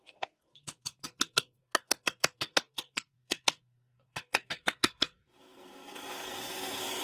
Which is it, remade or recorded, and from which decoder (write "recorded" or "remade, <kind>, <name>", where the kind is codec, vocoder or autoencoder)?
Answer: remade, codec, SNAC